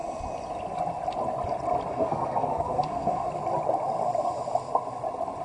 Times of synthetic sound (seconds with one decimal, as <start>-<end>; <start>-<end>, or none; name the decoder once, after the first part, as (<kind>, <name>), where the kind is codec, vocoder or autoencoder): 1.9-3.3 (codec, SNAC)